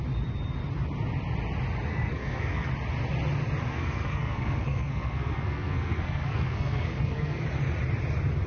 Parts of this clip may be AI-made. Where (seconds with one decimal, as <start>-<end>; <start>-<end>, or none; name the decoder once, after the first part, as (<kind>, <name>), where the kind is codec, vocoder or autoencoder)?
1.9-2.7 (codec, SNAC); 3.7-7.4